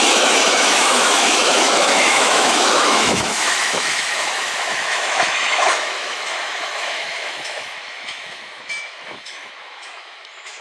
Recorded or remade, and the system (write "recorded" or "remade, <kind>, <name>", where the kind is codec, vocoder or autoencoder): remade, autoencoder, DAC-VAE